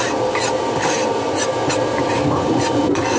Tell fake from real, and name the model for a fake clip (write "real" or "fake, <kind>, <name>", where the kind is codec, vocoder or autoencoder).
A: real